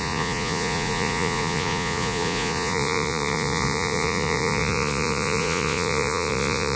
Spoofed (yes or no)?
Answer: yes